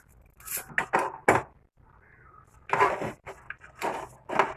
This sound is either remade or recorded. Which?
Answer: recorded